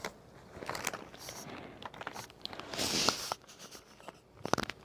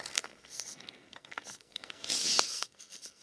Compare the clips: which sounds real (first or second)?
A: first